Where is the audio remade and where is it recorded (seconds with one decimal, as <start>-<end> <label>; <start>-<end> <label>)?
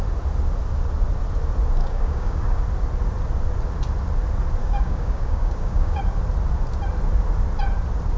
0.0-1.8 recorded; 1.8-2.6 remade; 2.6-4.6 recorded; 4.6-6.0 remade; 6.0-8.2 recorded